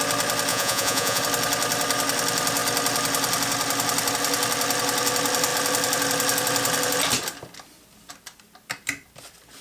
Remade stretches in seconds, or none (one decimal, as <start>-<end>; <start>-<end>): 0.5-1.2